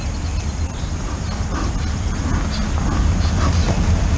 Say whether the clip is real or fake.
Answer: real